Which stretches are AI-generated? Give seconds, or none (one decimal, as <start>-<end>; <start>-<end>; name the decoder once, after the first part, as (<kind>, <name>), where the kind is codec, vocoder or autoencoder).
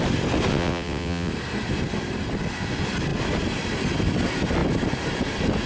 0.5-1.3 (vocoder, WaveNeXt)